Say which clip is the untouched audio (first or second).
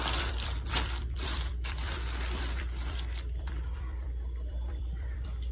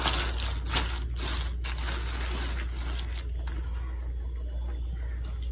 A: second